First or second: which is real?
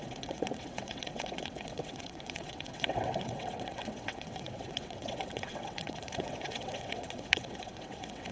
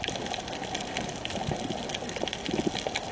second